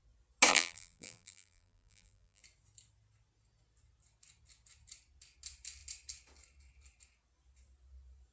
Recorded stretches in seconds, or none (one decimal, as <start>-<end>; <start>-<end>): 0.0-0.5; 2.4-8.3